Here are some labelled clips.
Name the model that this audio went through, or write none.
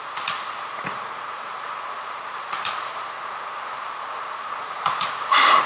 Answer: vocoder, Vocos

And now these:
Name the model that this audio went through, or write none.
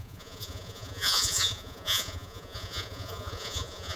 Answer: vocoder, Vocos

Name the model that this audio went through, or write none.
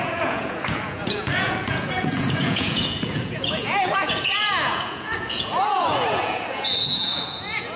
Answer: vocoder, Vocos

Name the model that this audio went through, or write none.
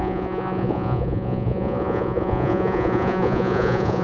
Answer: vocoder, Vocos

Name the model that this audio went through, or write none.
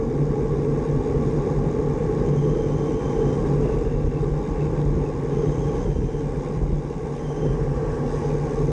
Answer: none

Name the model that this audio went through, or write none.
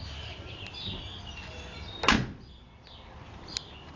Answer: none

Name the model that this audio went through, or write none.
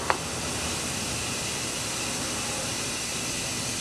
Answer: none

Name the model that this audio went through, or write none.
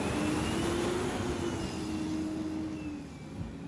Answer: none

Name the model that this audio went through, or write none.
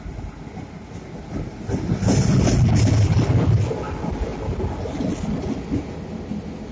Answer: none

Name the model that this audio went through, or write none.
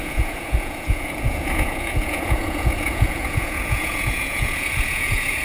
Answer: vocoder, Vocos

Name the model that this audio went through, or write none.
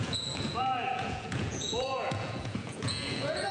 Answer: vocoder, Vocos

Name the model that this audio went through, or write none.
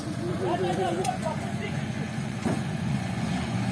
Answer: vocoder, Vocos